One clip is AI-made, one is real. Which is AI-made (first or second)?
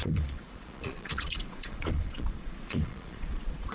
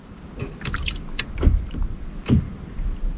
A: first